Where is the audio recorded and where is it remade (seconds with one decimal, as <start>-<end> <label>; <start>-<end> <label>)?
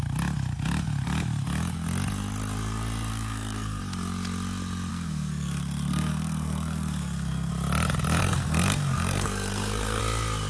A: 0.0-3.1 recorded; 3.1-3.8 remade; 3.8-4.9 recorded; 4.9-7.5 remade; 7.5-8.2 recorded; 8.2-10.0 remade; 10.0-10.5 recorded